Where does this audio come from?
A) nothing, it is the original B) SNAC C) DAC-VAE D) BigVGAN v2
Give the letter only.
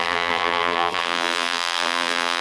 D